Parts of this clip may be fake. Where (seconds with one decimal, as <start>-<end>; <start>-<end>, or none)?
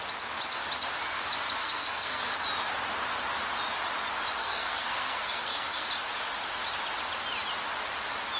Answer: 1.6-2.2; 4.4-5.9